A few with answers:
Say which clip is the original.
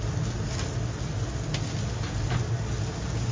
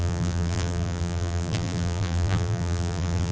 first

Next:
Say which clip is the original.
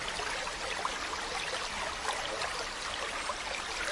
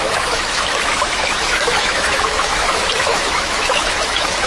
first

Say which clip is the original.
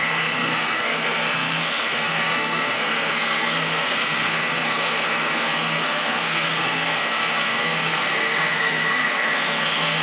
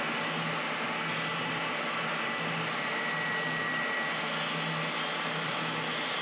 second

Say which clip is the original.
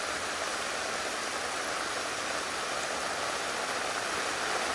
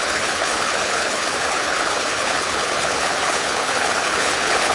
first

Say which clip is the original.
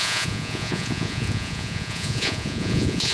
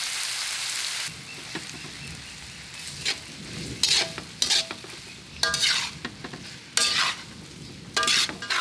second